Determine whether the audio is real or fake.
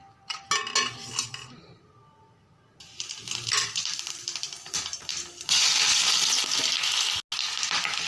real